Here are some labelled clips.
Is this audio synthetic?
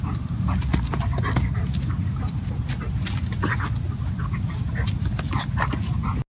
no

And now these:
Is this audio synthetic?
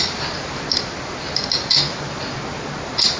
no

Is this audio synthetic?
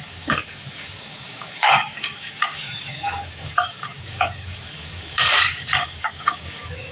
yes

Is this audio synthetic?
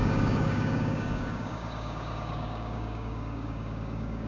yes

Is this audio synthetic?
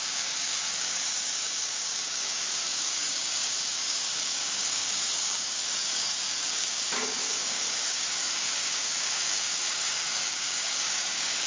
yes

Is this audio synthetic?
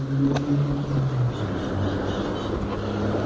no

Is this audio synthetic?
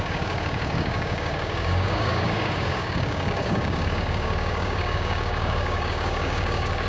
yes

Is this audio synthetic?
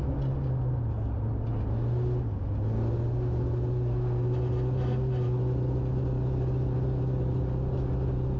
no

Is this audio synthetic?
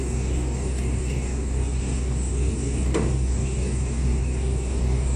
yes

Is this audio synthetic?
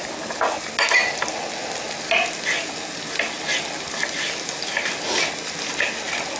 no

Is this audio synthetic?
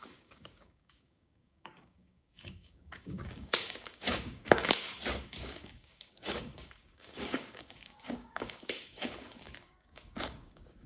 yes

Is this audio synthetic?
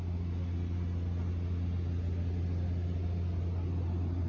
no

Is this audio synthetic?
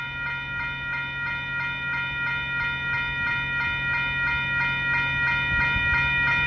no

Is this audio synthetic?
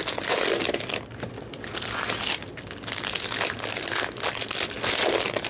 no